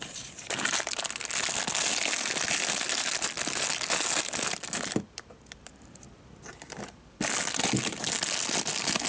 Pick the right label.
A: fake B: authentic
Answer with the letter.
B